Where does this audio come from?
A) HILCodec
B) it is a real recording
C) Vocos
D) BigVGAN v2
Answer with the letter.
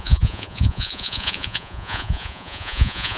C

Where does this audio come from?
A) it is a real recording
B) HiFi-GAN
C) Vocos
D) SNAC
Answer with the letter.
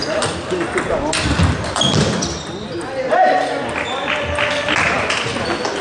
A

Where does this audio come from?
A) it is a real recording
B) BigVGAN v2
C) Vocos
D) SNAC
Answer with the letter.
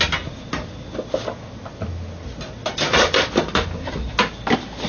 A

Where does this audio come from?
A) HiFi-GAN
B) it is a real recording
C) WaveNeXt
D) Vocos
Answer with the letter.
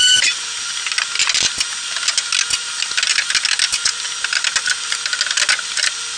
B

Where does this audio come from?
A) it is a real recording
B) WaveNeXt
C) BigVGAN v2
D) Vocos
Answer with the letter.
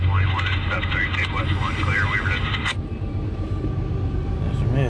A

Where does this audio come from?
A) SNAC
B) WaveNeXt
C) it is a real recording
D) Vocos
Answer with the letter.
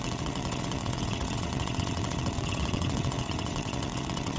B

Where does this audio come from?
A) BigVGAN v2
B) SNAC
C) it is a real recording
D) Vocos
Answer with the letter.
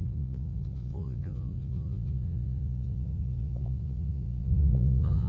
D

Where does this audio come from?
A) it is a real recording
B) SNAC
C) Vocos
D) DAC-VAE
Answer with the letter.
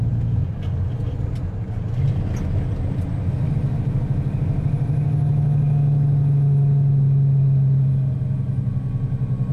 A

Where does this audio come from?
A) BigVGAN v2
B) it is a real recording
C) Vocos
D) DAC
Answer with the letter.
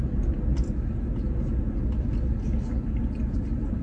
B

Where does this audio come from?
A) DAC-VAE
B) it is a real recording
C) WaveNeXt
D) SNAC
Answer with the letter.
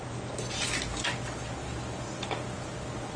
B